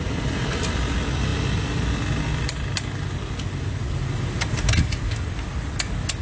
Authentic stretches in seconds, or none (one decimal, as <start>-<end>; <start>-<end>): 0.0-6.2